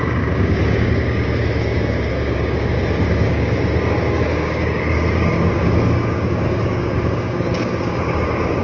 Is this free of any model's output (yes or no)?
no